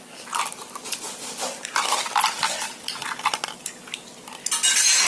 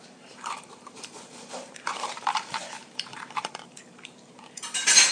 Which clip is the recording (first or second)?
first